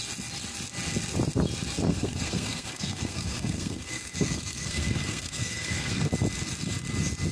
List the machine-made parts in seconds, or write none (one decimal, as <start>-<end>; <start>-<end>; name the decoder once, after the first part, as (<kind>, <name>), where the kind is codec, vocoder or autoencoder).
1.9-6.1 (codec, SNAC)